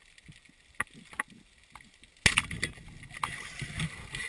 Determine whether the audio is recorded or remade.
recorded